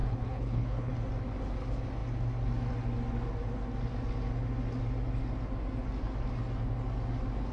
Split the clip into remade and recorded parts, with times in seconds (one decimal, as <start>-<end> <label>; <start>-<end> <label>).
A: 0.0-0.9 remade; 0.9-7.5 recorded